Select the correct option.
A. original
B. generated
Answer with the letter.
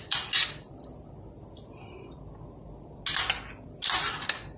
A